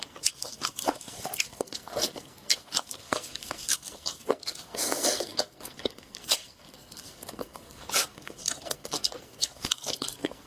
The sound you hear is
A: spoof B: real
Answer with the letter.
A